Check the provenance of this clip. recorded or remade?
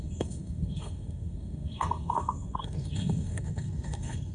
remade